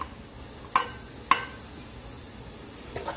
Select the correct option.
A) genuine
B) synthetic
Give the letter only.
A